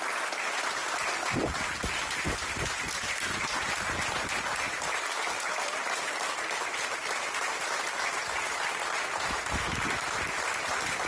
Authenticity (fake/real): real